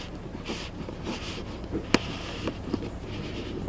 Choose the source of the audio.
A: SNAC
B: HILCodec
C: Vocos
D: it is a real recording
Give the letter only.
D